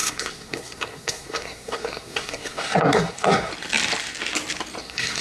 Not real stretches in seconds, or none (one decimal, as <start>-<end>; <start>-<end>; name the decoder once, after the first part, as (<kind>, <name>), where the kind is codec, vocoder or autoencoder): 0.0-3.5 (codec, SNAC); 4.8-5.2